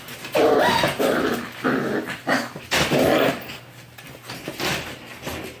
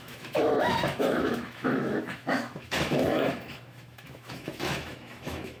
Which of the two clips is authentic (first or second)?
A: first